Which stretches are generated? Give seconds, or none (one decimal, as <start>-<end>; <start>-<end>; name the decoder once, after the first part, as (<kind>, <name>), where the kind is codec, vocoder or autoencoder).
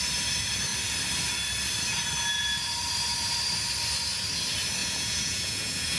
4.8-6.0 (vocoder, Vocos)